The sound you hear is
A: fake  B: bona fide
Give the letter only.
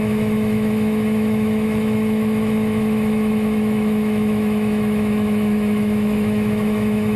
A